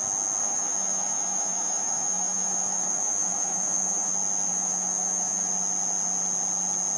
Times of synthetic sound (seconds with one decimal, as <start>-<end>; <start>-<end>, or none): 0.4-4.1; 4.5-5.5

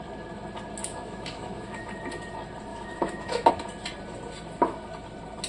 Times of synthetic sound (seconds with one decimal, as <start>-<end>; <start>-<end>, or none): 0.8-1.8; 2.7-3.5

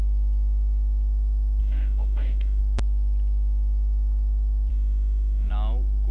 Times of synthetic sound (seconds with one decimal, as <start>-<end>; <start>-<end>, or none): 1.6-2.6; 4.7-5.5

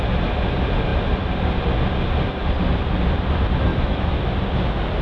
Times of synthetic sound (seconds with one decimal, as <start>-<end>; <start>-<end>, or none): 3.7-4.3

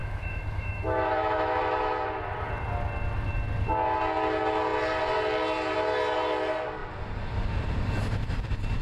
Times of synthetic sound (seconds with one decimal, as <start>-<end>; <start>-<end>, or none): 0.0-1.6

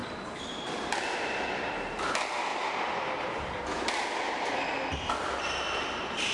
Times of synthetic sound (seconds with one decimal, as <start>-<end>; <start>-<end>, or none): none